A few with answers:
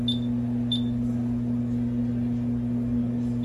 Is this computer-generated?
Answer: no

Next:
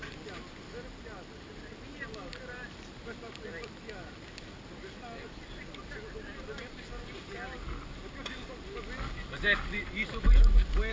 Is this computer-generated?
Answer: no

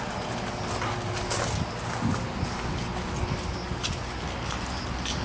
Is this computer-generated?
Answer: no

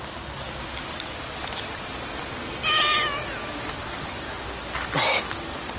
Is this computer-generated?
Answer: no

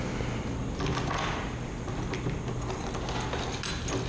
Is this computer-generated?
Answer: no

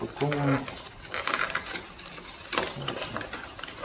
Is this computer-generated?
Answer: no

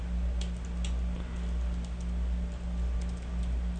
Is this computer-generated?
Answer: no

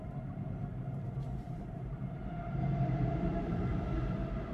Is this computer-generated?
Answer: yes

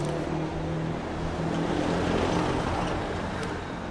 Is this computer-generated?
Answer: no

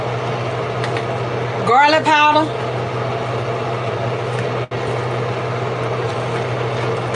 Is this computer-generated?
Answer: no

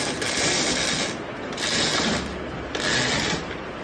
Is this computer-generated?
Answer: no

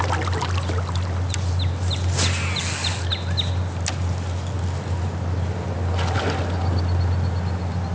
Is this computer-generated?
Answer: no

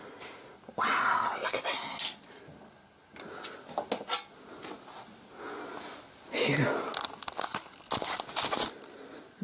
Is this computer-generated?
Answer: no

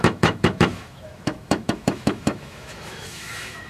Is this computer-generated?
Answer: yes